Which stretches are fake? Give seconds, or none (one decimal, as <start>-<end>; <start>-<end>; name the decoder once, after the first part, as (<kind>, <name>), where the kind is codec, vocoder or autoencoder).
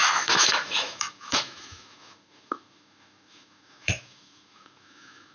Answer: 0.0-5.3 (autoencoder, DAC-VAE)